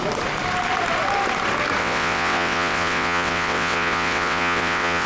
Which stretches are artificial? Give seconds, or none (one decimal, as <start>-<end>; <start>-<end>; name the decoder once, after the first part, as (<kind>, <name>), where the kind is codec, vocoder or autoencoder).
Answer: 1.8-5.1 (vocoder, WaveNeXt)

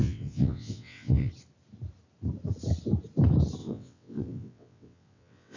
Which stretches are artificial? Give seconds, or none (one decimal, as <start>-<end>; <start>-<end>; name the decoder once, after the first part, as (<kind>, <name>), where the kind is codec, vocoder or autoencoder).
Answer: 0.0-1.3 (vocoder, WaveNeXt); 3.6-5.6

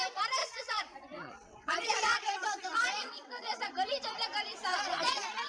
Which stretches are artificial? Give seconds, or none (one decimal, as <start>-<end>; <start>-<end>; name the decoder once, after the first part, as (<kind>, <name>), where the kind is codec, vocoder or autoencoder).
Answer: 0.4-3.7 (vocoder, WaveNeXt); 4.7-5.5

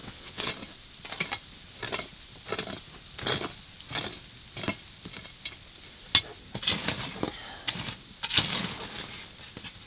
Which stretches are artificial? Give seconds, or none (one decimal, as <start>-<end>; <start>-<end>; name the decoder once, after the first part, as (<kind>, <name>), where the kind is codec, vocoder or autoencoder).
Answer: 0.0-0.5 (vocoder, WaveNeXt)

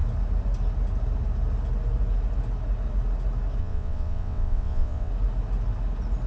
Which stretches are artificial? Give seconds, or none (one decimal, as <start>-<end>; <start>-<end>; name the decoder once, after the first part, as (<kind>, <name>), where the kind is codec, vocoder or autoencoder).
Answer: 3.6-5.1 (vocoder, WaveNeXt)